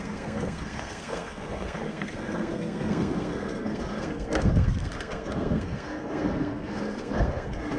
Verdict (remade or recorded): remade